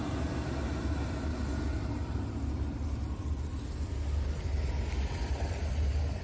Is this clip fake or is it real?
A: real